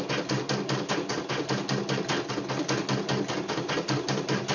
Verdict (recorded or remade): recorded